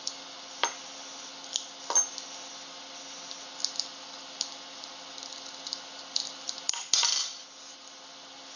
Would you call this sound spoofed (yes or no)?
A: no